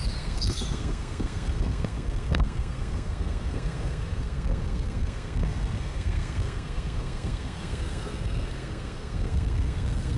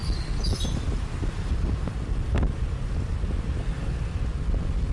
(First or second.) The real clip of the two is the second